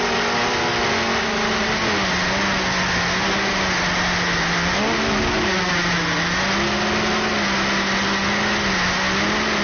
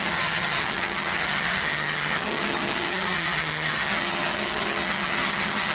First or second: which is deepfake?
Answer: second